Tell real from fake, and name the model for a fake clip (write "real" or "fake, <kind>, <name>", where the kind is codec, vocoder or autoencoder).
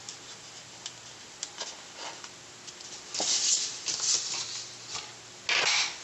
real